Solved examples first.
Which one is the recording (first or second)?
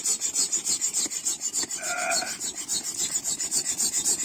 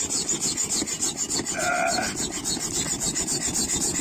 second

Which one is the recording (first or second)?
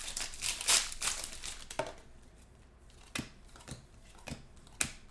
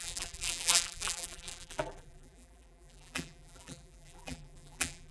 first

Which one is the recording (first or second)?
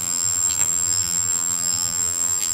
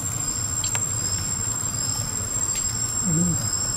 second